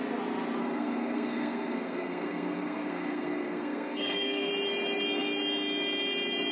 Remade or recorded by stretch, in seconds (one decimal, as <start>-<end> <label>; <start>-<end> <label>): 0.0-0.6 recorded; 0.6-4.5 remade; 4.5-6.5 recorded